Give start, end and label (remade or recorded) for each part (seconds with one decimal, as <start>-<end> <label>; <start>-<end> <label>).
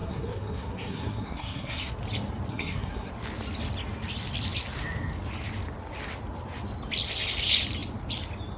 0.0-1.9 remade; 1.9-2.5 recorded; 2.5-3.1 remade; 3.1-8.6 recorded